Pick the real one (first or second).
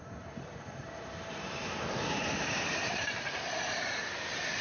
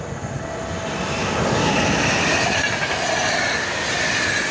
second